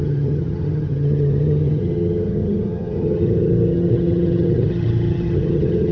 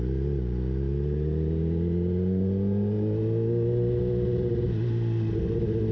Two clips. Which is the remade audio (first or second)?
first